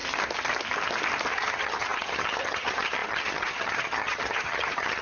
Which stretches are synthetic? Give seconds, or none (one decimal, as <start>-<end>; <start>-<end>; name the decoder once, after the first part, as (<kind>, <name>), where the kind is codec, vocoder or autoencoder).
1.3-5.0 (vocoder, HiFi-GAN)